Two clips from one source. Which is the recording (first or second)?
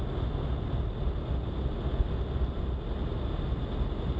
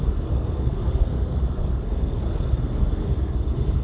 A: first